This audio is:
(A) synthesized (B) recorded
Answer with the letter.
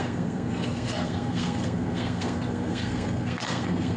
A